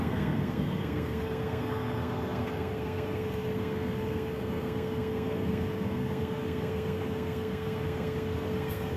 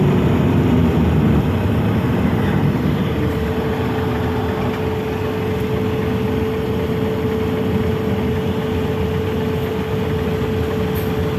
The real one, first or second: second